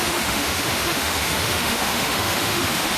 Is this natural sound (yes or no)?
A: no